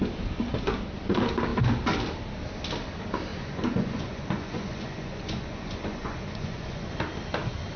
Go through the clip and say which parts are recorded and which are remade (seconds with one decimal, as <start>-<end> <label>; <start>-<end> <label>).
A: 0.0-3.3 recorded; 3.3-6.9 remade; 6.9-7.8 recorded